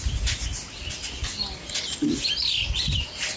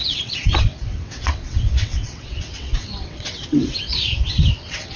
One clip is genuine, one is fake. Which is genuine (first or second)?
first